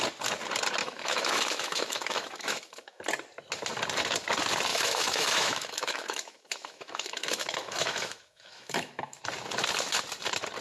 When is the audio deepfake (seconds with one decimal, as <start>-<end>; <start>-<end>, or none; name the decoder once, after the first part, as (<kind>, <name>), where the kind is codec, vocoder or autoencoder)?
0.8-3.0 (autoencoder, DAC-VAE); 4.7-9.2